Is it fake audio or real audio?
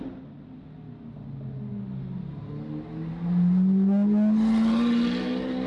real